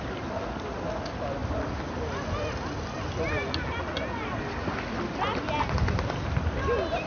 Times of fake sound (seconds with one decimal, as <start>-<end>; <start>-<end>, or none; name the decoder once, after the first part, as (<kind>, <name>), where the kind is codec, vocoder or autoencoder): none